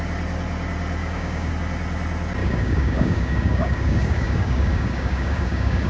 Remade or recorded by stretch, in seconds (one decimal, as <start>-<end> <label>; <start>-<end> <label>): 0.0-1.0 recorded; 1.0-1.5 remade; 1.5-2.4 recorded; 2.4-5.9 remade